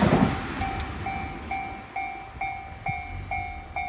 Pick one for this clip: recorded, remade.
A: recorded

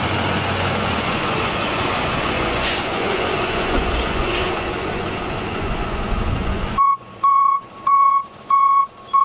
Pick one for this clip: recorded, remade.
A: remade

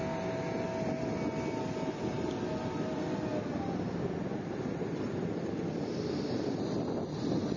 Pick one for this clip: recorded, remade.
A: recorded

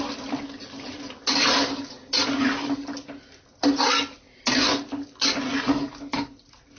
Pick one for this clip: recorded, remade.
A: recorded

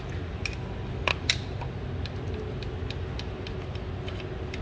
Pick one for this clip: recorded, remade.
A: recorded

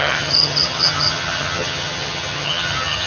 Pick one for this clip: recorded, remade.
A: remade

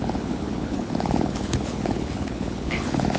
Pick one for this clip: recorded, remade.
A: remade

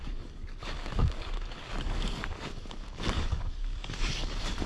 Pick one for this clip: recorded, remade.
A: remade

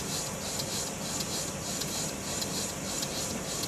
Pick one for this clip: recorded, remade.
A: recorded